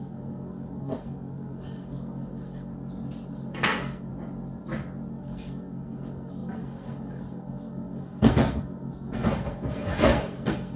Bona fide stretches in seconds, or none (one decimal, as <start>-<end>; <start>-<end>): 2.7-3.3; 4.1-5.1